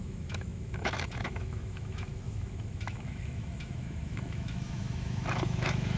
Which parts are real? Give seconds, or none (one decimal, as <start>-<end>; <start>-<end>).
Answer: none